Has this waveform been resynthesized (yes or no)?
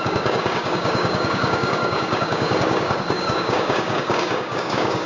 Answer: yes